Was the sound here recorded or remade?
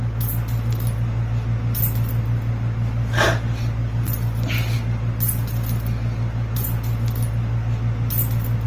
recorded